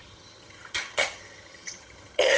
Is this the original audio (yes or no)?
no